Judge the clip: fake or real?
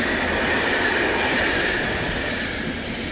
real